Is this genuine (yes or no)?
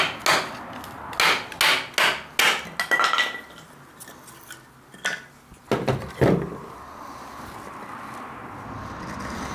yes